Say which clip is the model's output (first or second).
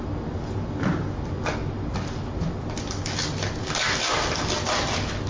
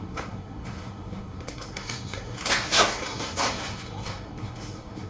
second